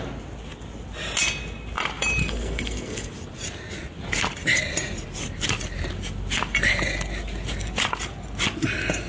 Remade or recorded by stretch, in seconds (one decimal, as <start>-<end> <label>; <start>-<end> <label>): 0.0-2.2 recorded; 2.2-3.1 remade; 3.1-9.1 recorded